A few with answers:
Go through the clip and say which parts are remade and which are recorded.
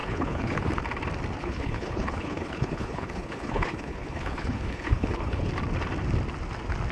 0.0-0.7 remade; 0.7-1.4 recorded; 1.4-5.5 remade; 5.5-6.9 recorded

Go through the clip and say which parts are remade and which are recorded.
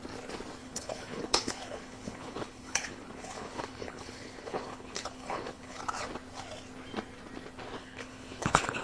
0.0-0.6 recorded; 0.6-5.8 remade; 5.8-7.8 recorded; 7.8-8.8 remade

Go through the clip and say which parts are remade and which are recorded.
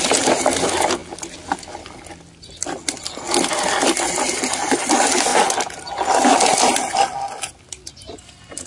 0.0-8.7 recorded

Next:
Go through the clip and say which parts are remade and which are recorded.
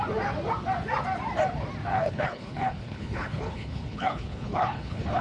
0.0-1.9 recorded; 1.9-5.2 remade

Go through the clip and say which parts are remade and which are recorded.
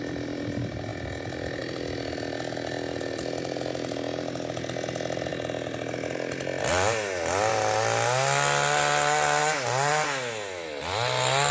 0.0-11.5 recorded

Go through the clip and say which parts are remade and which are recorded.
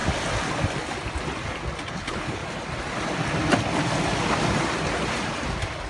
0.0-1.9 recorded; 1.9-2.4 remade; 2.4-5.9 recorded